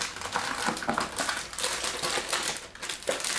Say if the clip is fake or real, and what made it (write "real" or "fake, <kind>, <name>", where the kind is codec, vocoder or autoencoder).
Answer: real